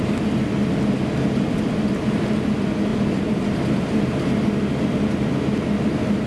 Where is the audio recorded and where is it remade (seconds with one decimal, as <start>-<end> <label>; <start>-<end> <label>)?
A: 0.0-2.9 recorded; 2.9-4.1 remade; 4.1-6.3 recorded